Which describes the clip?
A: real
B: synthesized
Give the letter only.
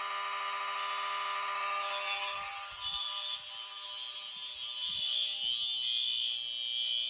A